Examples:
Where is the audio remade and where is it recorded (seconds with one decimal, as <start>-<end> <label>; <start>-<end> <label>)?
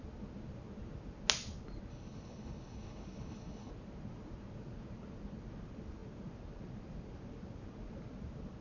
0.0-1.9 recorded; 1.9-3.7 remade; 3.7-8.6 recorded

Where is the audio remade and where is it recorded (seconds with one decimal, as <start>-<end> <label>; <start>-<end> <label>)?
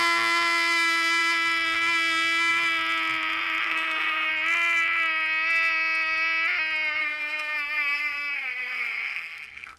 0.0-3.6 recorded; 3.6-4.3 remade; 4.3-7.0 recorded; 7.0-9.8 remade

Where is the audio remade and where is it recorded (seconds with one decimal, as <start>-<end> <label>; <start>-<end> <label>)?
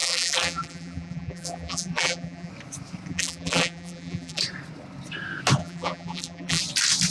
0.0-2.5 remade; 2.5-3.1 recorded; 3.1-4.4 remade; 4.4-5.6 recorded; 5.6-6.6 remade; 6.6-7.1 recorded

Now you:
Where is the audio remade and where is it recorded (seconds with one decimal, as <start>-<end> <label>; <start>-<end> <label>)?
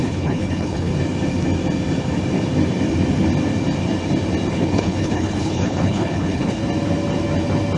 0.0-0.9 remade; 0.9-4.5 recorded; 4.5-6.6 remade; 6.6-7.8 recorded